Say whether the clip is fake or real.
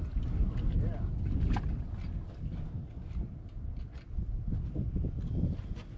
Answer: real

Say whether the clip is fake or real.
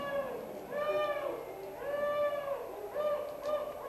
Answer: real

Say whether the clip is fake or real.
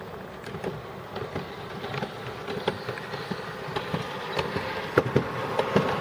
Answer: real